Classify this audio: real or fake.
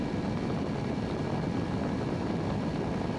real